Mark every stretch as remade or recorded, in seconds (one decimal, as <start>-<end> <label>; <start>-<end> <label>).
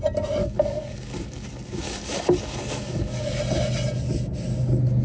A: 0.0-0.4 recorded; 0.4-3.4 remade; 3.4-5.0 recorded